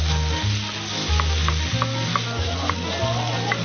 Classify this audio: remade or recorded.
recorded